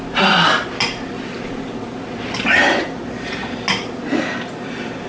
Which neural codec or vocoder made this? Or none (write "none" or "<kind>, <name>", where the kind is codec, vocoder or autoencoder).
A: none